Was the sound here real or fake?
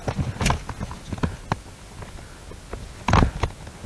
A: real